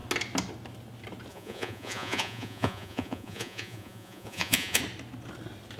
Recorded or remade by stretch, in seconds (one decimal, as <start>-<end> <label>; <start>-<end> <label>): 0.0-1.3 recorded; 1.3-4.8 remade; 4.8-5.8 recorded